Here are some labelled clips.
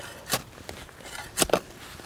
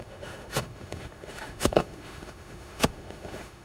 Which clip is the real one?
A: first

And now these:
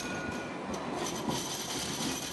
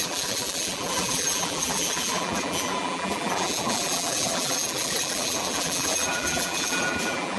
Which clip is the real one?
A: first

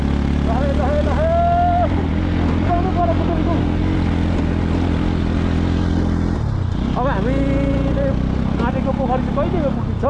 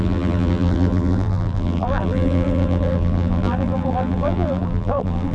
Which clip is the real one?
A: first